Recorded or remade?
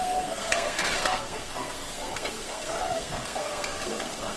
remade